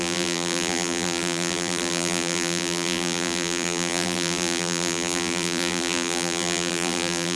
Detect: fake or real fake